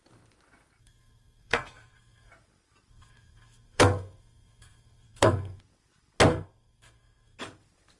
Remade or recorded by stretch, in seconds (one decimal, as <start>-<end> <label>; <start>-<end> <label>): 0.0-0.8 recorded; 0.8-2.3 remade; 2.3-2.9 recorded; 2.9-5.6 remade; 5.6-6.3 recorded; 6.3-7.4 remade; 7.4-8.0 recorded